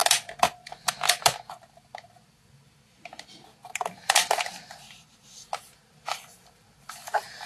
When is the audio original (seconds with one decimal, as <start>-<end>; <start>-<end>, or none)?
0.0-7.5